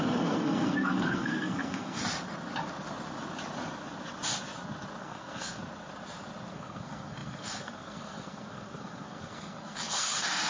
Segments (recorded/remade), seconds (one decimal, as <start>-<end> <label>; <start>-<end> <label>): 0.0-2.0 remade; 2.0-5.0 recorded; 5.0-5.6 remade; 5.6-6.5 recorded; 6.5-10.5 remade